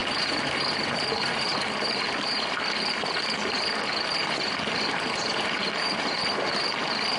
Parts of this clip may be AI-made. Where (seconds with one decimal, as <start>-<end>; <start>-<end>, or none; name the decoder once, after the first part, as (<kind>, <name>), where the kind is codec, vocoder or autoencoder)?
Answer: 0.0-1.4 (vocoder, BigVGAN v2); 4.2-6.6